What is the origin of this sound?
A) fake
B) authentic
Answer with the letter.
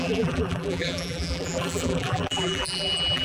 A